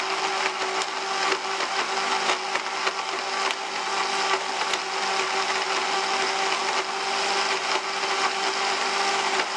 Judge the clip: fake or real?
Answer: real